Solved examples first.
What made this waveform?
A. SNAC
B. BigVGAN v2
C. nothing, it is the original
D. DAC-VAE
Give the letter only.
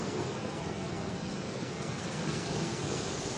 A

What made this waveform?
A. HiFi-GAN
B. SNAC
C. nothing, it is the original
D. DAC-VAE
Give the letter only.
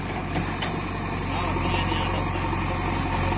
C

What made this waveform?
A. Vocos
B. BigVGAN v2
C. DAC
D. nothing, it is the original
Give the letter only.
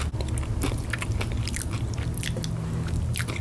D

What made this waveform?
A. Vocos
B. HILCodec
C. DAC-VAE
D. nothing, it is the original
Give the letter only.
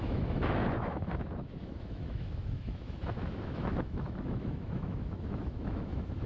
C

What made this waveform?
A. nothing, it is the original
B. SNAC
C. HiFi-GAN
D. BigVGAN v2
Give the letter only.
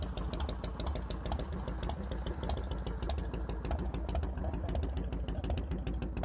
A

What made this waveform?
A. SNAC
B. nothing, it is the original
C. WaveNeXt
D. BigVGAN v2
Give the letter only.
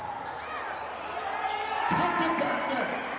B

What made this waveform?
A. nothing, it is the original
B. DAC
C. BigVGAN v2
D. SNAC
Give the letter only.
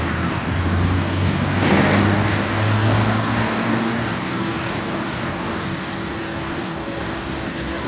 B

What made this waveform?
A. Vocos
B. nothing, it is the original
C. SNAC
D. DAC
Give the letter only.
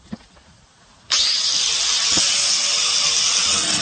B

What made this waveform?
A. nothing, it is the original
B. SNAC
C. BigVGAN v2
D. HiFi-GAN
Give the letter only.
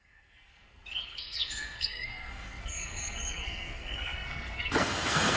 B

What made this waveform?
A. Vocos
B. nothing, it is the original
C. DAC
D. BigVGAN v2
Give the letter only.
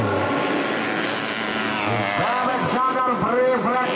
B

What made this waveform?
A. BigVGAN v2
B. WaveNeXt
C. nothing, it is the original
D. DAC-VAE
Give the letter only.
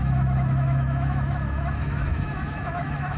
D